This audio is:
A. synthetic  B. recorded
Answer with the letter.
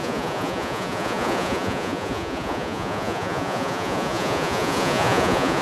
A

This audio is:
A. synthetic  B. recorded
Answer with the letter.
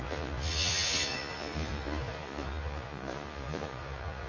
A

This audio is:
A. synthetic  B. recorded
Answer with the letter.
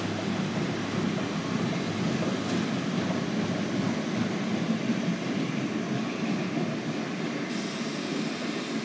B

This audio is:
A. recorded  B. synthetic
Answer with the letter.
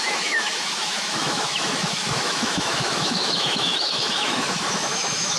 B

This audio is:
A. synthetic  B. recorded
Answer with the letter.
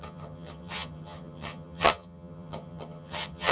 A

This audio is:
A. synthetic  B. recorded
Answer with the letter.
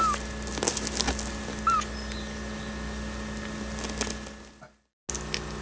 B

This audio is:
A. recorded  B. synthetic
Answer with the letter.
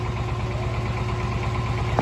A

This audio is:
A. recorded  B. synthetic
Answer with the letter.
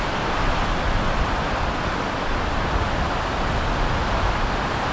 A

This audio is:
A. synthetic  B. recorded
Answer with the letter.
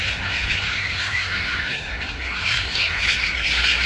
A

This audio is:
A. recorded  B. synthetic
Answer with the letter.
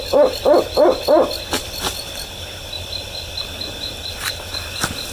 A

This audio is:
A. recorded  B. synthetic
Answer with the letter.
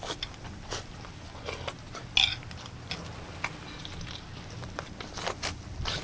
A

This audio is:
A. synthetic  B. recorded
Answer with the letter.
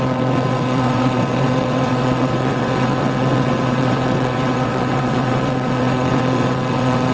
A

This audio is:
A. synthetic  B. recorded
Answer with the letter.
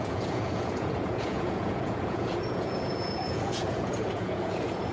A